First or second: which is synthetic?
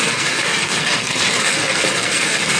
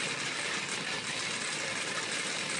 first